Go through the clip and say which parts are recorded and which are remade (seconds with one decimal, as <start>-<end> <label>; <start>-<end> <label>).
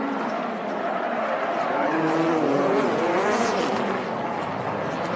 0.0-2.5 recorded; 2.5-3.6 remade; 3.6-5.2 recorded